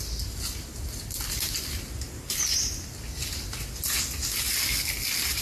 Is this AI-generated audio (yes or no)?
no